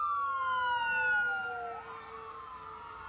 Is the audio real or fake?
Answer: real